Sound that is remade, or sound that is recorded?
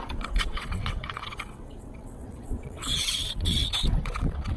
remade